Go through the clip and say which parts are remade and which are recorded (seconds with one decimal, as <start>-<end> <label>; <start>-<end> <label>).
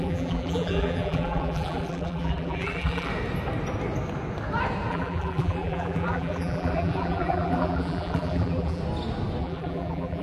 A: 0.0-3.1 remade; 3.1-4.9 recorded; 4.9-8.8 remade; 8.8-9.4 recorded; 9.4-10.2 remade